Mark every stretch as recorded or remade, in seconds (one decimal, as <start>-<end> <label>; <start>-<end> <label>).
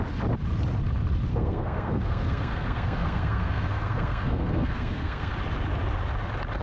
0.0-1.3 recorded; 1.3-5.3 remade; 5.3-6.6 recorded